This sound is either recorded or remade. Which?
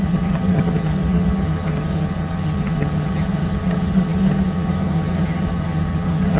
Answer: remade